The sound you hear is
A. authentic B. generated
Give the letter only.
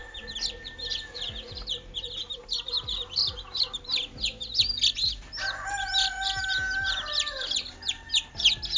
A